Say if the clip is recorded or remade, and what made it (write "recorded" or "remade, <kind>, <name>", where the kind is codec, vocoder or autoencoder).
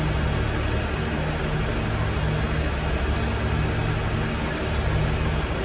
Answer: recorded